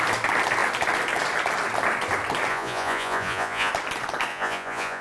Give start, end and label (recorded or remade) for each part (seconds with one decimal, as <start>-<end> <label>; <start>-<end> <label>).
0.0-2.5 recorded; 2.5-3.7 remade; 3.7-4.3 recorded; 4.3-5.0 remade